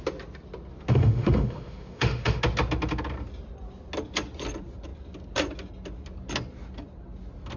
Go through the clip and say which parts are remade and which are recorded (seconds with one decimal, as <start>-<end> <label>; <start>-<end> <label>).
0.0-0.9 recorded; 0.9-2.4 remade; 2.4-7.6 recorded